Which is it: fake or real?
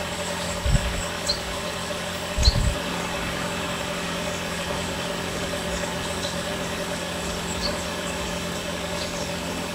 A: fake